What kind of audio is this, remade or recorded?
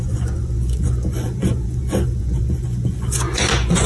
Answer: remade